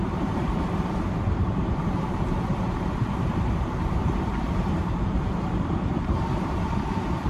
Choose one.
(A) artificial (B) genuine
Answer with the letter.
A